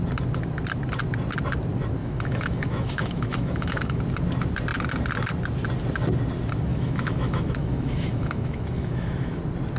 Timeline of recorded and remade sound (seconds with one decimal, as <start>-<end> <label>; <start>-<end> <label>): 0.0-2.0 recorded; 2.0-4.0 remade; 4.0-6.7 recorded; 6.7-9.4 remade; 9.4-9.8 recorded